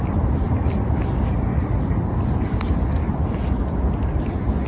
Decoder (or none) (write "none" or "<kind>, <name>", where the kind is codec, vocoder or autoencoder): none